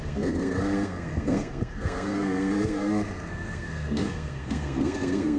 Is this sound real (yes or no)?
no